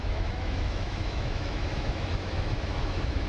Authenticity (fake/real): fake